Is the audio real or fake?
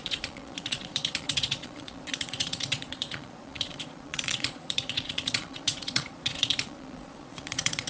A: fake